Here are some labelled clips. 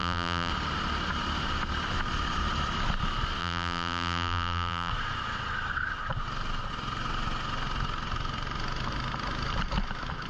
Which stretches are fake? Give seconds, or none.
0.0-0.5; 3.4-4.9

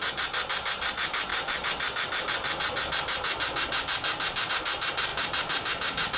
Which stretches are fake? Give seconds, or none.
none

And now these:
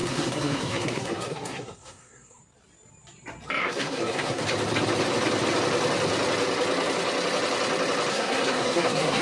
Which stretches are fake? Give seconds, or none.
0.0-2.4; 3.6-4.4; 8.1-9.2

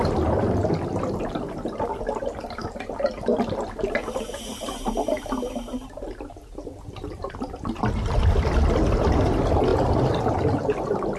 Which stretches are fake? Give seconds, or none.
3.3-8.2

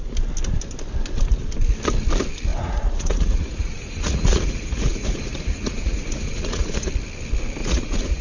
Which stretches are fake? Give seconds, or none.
2.5-6.9; 7.6-8.2

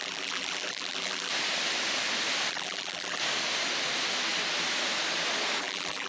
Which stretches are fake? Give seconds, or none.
0.0-1.3; 2.5-3.2; 5.6-6.1

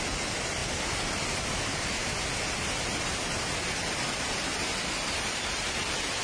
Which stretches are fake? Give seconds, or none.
none